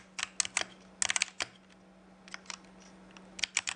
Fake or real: real